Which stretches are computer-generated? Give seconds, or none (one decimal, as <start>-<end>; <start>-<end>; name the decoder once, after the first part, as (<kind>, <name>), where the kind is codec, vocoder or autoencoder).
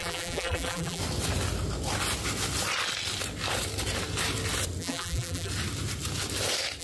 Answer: 0.0-1.0 (vocoder, BigVGAN v2); 4.8-5.5